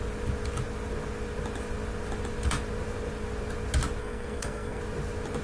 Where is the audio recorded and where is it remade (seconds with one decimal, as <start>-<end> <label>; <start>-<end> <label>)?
0.0-4.0 recorded; 4.0-4.8 remade; 4.8-5.4 recorded